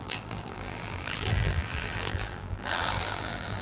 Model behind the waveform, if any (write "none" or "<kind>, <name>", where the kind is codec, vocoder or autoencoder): vocoder, BigVGAN v2